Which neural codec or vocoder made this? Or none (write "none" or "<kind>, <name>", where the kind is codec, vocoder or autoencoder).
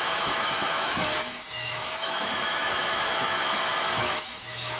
autoencoder, DAC-VAE